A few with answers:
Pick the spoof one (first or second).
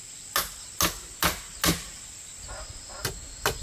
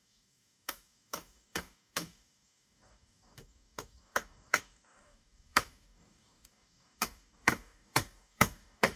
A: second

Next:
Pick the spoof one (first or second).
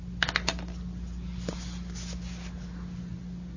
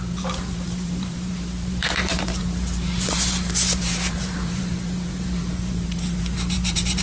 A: second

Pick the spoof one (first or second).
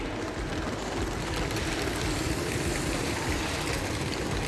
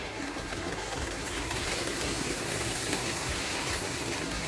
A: second